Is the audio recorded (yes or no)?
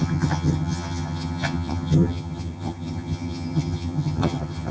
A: no